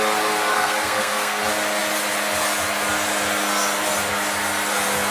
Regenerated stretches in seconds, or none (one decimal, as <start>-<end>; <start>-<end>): 0.5-1.4